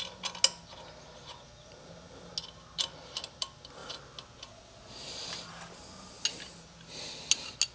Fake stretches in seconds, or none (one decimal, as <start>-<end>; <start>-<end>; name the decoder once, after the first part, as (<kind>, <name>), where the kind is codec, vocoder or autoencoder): none